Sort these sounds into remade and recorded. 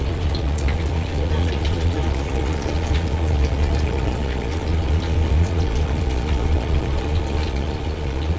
remade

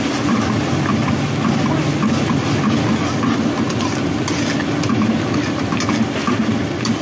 recorded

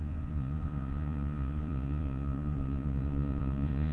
remade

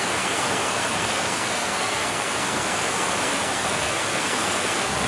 remade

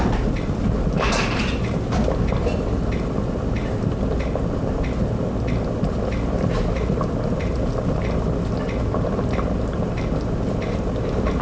recorded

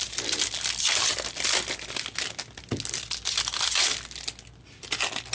recorded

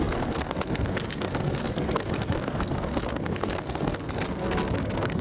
remade